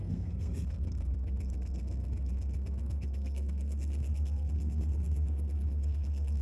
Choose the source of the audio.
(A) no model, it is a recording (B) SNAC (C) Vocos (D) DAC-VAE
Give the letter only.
B